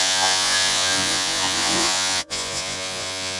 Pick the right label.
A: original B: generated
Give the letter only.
B